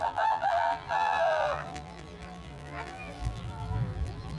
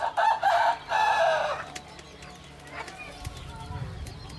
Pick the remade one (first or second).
first